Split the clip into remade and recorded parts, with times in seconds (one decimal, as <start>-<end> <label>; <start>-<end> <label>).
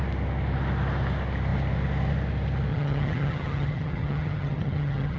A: 0.0-2.7 recorded; 2.7-5.2 remade